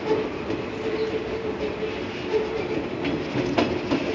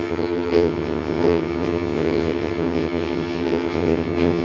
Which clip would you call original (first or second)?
first